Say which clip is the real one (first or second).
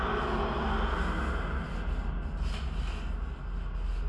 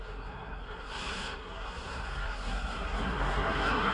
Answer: first